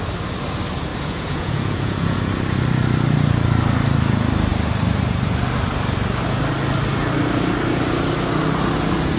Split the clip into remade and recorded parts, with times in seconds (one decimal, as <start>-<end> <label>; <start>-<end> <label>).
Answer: 0.0-0.9 recorded; 0.9-2.2 remade; 2.2-9.2 recorded